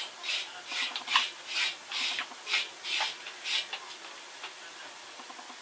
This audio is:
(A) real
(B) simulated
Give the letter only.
A